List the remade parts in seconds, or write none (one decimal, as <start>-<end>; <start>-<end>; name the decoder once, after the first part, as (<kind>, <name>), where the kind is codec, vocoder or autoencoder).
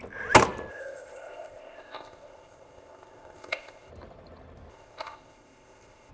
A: 0.7-3.9 (codec, ZipCodec); 4.7-6.1